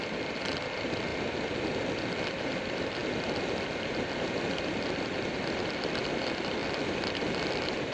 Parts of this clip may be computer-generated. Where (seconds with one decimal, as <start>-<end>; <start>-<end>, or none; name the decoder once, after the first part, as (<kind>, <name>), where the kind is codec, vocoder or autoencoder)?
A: 0.0-1.1 (vocoder, BigVGAN v2); 2.4-3.0; 4.8-6.6; 7.4-7.9